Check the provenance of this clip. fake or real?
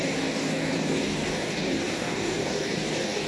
fake